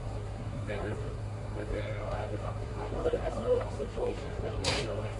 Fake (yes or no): yes